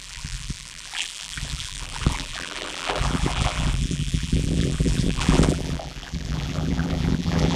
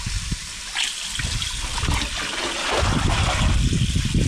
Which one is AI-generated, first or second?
first